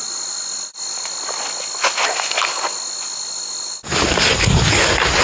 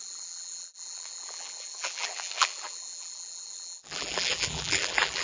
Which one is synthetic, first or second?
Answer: second